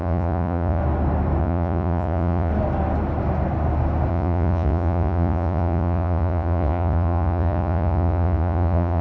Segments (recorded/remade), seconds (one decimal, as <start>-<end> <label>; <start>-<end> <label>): 0.0-0.8 remade; 0.8-1.4 recorded; 1.4-2.5 remade; 2.5-4.1 recorded; 4.1-9.0 remade